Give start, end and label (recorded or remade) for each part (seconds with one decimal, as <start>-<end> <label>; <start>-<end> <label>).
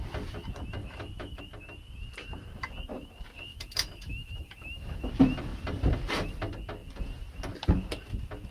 0.0-0.8 recorded; 0.8-1.4 remade; 1.4-3.5 recorded; 3.5-5.1 remade; 5.1-8.5 recorded